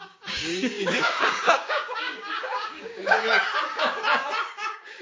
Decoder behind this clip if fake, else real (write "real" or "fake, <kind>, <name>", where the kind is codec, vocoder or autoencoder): fake, codec, DAC